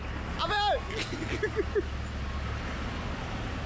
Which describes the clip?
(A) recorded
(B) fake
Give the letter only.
A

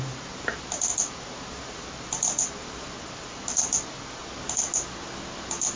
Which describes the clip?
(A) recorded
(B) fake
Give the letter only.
A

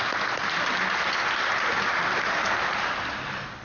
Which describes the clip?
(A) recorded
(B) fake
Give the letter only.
A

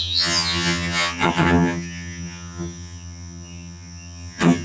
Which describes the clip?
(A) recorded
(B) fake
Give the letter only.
B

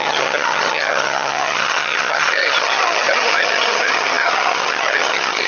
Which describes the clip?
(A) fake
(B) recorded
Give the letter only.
A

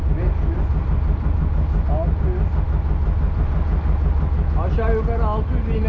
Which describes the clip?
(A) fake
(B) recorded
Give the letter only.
B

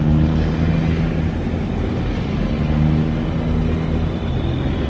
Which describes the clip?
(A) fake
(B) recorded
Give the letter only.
B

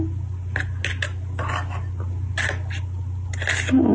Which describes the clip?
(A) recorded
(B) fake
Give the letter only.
A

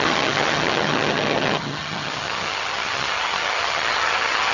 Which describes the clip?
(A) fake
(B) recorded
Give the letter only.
A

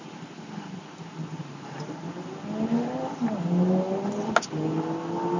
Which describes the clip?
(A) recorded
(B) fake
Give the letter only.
A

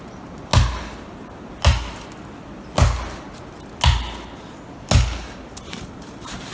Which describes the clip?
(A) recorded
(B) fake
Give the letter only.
A